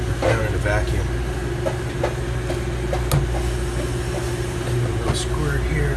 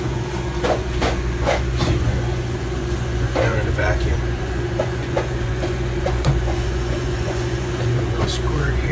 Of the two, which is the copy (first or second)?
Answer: second